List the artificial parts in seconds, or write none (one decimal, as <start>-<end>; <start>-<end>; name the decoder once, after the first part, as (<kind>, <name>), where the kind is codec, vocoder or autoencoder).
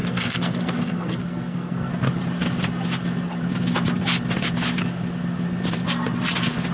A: 0.0-1.9 (codec, SNAC)